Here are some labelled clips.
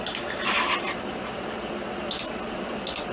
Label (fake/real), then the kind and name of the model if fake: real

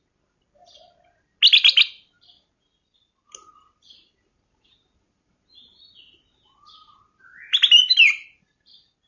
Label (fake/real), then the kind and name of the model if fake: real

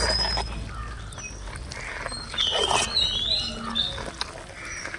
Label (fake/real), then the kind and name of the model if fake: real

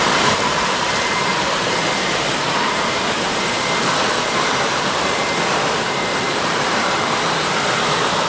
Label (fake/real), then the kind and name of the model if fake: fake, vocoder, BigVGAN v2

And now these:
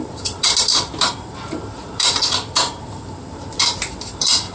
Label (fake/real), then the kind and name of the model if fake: fake, vocoder, BigVGAN v2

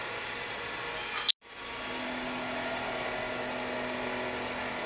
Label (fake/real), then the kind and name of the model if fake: real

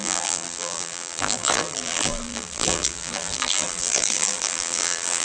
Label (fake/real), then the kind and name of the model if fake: fake, vocoder, BigVGAN v2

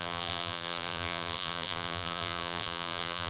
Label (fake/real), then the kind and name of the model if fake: fake, vocoder, BigVGAN v2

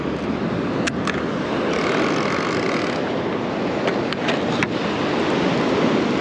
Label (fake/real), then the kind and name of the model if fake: real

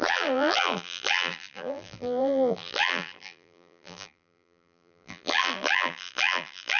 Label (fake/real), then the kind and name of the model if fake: fake, vocoder, BigVGAN v2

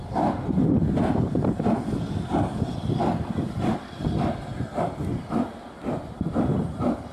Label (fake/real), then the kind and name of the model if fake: real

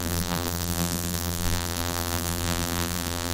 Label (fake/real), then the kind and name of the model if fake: fake, vocoder, BigVGAN v2